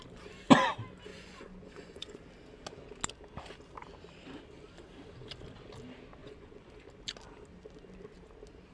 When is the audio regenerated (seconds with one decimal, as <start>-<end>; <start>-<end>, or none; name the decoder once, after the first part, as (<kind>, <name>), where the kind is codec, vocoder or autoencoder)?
1.1-2.2 (vocoder, Vocos); 6.2-6.7